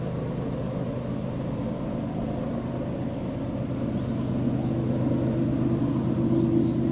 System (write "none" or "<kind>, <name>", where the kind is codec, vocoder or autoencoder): none